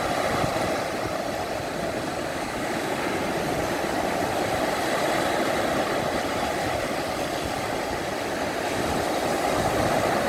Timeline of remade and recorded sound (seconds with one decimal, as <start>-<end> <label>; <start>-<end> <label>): 0.0-2.3 recorded; 2.3-3.2 remade; 3.2-10.3 recorded